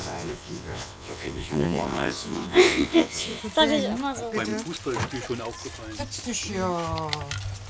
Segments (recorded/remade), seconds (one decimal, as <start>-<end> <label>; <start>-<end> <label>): 0.0-3.4 remade; 3.4-7.7 recorded